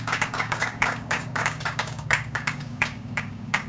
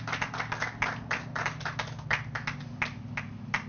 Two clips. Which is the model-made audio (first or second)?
first